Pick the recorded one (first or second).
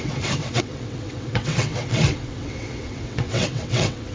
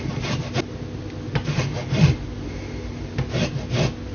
second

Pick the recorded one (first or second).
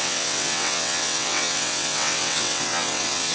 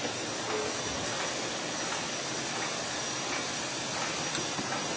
second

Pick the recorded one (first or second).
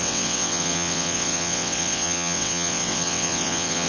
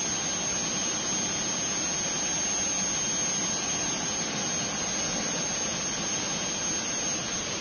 second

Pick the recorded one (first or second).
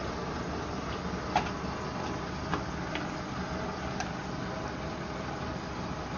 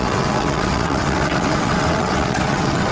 first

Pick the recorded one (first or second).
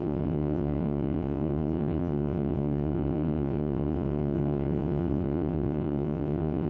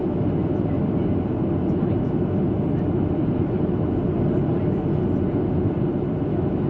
second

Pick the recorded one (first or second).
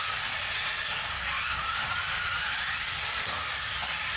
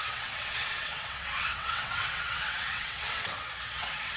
first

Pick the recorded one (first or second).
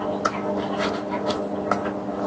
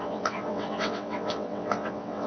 first